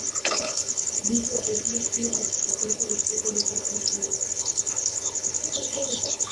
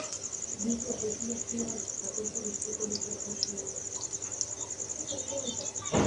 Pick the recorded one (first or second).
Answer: second